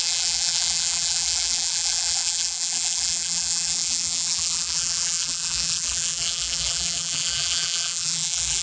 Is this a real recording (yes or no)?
no